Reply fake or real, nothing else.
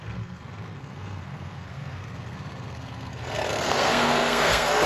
fake